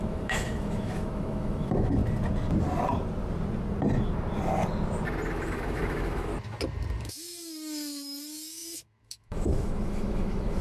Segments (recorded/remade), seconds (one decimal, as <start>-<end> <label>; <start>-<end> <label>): 0.0-2.0 remade; 2.0-5.3 recorded; 5.3-6.3 remade; 6.3-7.0 recorded; 7.0-10.6 remade